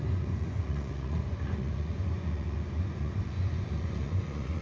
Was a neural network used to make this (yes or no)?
yes